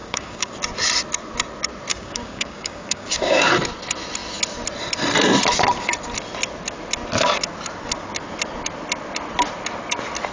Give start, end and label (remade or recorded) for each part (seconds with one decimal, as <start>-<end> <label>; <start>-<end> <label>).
0.0-0.5 remade; 0.5-1.9 recorded; 1.9-3.5 remade; 3.5-10.3 recorded